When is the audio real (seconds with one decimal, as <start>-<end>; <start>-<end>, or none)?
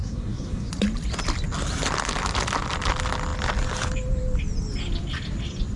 0.7-5.8